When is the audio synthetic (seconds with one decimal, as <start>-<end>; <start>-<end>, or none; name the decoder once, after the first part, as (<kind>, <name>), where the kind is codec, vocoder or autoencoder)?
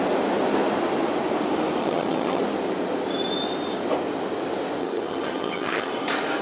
1.8-2.4 (vocoder, HiFi-GAN); 4.8-5.9